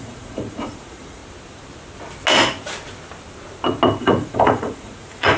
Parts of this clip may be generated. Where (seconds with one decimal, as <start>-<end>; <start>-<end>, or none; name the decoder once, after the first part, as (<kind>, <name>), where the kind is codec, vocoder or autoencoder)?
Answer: 0.0-1.2 (vocoder, Vocos); 4.0-5.4